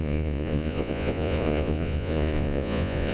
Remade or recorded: remade